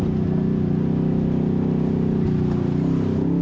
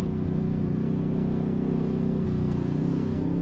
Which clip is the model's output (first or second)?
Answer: second